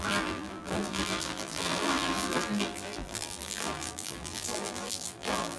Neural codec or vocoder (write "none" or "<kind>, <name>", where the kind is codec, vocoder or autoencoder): vocoder, BigVGAN v2